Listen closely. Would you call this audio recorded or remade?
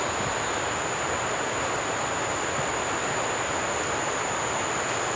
recorded